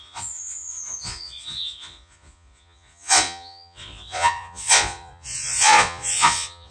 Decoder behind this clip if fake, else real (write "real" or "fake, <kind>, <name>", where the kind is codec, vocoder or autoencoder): fake, vocoder, Vocos